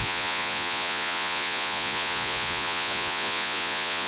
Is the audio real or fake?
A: fake